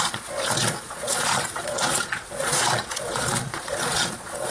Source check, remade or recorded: remade